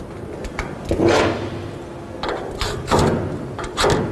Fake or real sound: real